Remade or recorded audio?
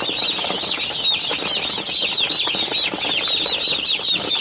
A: recorded